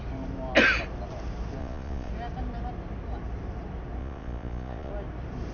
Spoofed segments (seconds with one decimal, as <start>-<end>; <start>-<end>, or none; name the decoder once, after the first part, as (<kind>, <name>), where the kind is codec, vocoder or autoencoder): 1.6-2.1 (vocoder, Vocos); 4.0-4.9